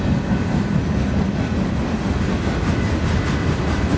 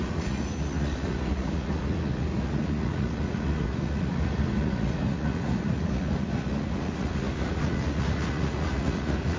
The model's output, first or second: second